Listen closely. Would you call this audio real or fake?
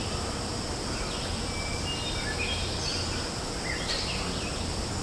real